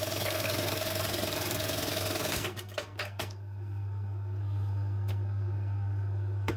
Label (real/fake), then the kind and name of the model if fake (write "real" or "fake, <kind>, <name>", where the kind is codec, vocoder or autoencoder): fake, codec, SNAC